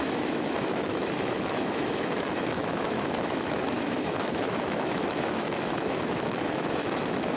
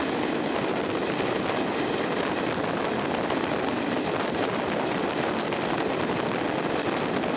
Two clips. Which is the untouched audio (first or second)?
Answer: second